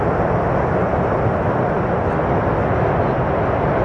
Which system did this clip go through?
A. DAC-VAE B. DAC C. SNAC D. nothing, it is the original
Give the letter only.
D